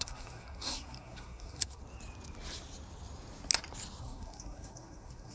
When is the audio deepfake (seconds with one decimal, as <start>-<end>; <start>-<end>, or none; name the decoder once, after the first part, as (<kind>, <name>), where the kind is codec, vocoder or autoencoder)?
0.0-1.8 (codec, SNAC); 4.0-5.3